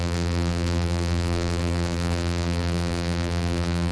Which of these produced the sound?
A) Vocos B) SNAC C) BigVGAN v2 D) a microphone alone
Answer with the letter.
C